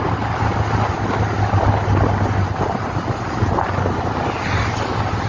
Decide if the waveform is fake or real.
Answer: real